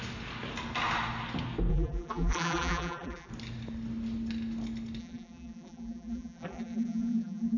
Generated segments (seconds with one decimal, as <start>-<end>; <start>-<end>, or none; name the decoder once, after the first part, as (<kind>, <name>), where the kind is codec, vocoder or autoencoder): 1.7-3.3 (vocoder, BigVGAN v2); 5.0-7.6